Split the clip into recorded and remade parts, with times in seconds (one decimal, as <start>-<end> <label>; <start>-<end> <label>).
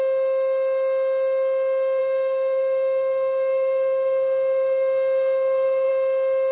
0.0-2.0 recorded; 2.0-5.9 remade; 5.9-6.5 recorded